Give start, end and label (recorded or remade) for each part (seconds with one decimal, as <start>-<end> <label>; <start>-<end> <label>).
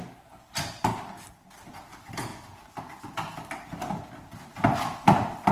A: 0.0-2.3 recorded; 2.3-3.0 remade; 3.0-5.5 recorded